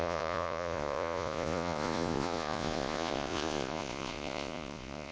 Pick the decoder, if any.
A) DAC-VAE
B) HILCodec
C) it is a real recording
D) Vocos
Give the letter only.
D